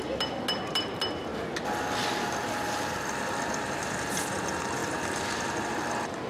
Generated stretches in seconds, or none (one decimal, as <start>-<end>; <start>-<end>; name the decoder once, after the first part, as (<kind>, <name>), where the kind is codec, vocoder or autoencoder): none